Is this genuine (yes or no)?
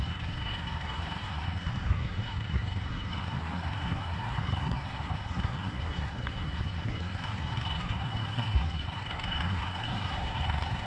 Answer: no